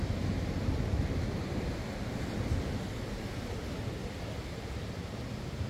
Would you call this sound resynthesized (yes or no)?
no